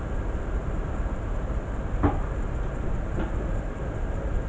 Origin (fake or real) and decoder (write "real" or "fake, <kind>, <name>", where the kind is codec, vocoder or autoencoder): real